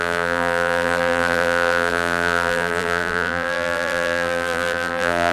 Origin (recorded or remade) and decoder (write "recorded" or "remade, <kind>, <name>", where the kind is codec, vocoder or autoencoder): remade, vocoder, BigVGAN v2